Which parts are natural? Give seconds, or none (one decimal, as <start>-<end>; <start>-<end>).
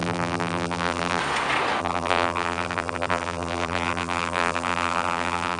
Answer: 1.2-1.8